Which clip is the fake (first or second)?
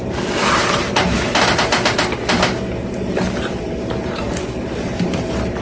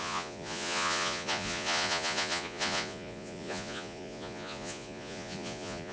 second